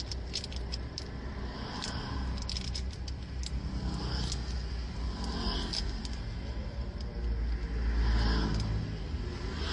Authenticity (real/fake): real